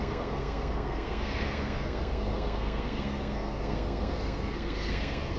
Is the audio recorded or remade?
remade